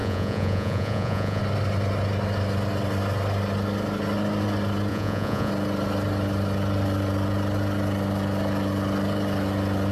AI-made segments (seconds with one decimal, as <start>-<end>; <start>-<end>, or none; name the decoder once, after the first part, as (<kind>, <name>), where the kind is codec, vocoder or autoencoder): 0.0-1.4 (vocoder, Vocos); 4.9-5.5